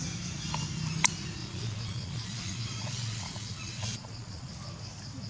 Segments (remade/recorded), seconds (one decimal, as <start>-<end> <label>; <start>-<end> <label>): 0.0-1.4 recorded; 1.4-4.5 remade; 4.5-5.3 recorded